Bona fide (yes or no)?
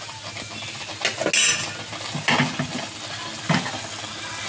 yes